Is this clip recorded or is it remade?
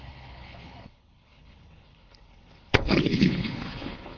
remade